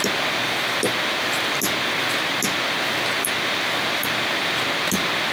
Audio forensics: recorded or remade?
recorded